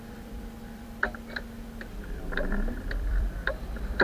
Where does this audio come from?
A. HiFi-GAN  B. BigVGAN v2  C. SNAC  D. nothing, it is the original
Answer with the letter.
B